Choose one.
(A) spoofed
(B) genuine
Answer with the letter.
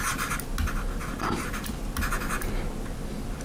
B